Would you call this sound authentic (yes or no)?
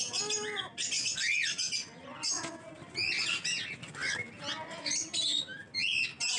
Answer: yes